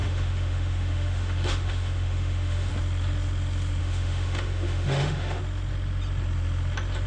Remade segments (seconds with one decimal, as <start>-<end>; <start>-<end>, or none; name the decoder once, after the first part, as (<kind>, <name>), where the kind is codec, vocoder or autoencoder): 0.0-2.7 (autoencoder, DAC-VAE); 3.8-5.4